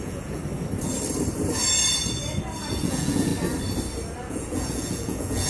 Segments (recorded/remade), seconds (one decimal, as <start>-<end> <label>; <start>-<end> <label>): 0.0-0.4 remade; 0.4-2.7 recorded; 2.7-3.3 remade; 3.3-4.3 recorded; 4.3-5.5 remade